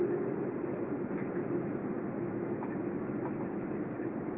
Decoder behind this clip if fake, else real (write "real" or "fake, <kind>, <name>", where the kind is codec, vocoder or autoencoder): real